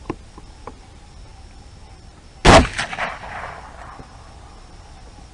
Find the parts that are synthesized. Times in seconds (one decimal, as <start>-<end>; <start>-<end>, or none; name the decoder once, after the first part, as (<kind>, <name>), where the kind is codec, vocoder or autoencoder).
0.0-1.3 (vocoder, BigVGAN v2); 3.1-5.3